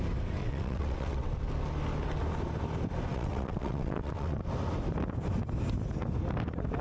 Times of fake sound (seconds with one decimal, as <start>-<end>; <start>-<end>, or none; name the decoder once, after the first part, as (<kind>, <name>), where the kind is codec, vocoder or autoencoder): 0.4-1.3 (vocoder, WaveNeXt); 3.1-4.4